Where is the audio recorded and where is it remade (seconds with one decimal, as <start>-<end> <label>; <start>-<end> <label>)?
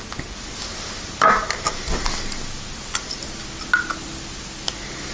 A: 0.0-5.1 recorded